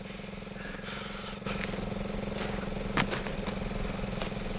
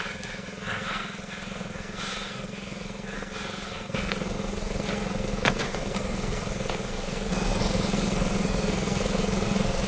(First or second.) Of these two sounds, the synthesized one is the second